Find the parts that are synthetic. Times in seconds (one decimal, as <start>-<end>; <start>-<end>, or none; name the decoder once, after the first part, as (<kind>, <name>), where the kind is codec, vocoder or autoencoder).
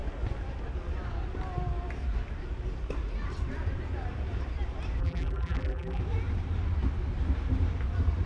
5.0-6.0 (vocoder, BigVGAN v2)